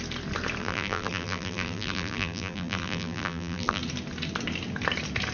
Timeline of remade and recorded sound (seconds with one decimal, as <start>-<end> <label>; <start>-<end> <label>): 0.0-0.6 recorded; 0.6-3.8 remade; 3.8-5.3 recorded